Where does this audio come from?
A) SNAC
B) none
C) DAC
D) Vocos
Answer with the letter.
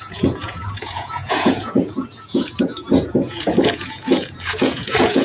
D